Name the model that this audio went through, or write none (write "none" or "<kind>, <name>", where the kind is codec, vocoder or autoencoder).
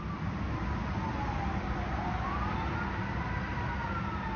none